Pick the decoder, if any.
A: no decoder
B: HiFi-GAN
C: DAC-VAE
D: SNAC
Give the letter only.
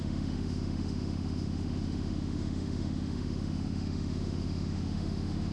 C